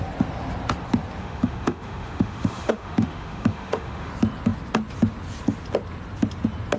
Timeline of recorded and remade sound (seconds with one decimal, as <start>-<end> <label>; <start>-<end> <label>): 0.0-1.2 recorded; 1.2-4.1 remade; 4.1-6.8 recorded